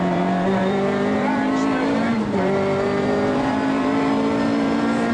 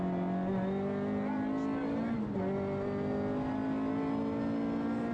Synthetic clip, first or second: first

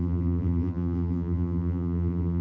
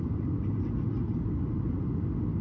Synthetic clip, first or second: first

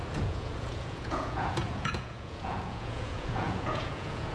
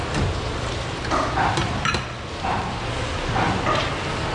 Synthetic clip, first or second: first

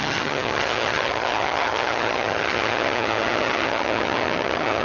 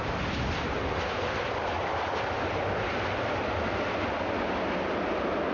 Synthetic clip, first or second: first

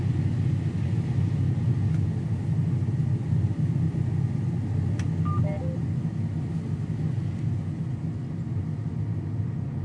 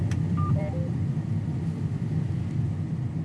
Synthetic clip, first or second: second